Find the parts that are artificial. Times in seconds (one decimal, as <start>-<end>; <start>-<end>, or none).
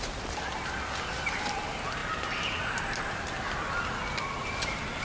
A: none